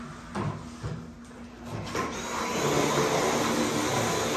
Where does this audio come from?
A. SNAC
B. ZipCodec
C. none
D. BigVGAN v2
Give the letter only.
C